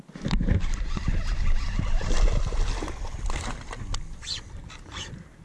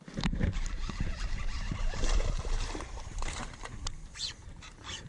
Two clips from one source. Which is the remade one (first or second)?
second